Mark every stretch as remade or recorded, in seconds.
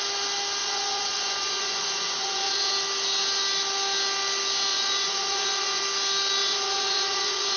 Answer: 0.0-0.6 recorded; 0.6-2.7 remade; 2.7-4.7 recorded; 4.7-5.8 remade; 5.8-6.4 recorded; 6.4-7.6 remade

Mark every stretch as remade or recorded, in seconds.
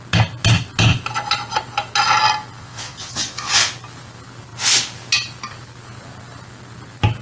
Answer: 0.0-2.6 recorded; 2.6-3.7 remade; 3.7-7.2 recorded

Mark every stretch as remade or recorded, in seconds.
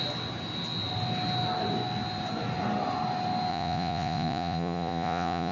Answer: 0.0-3.5 recorded; 3.5-5.5 remade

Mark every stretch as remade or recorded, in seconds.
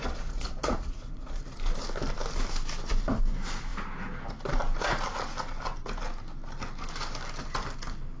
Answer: 0.0-1.4 remade; 1.4-8.2 recorded